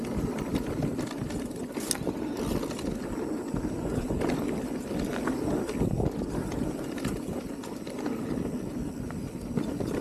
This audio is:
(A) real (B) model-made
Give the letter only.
A